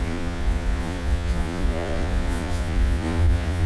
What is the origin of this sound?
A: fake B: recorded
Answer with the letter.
A